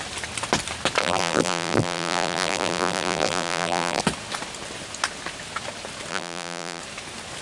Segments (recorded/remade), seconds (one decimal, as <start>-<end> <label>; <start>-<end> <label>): 0.0-1.0 recorded; 1.0-4.0 remade; 4.0-6.1 recorded; 6.1-6.8 remade; 6.8-7.4 recorded